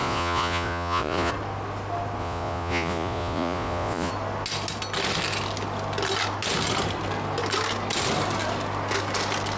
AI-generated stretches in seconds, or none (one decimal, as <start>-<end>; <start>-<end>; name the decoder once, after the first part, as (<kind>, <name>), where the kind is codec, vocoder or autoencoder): 0.0-1.3 (vocoder, Vocos); 2.2-4.1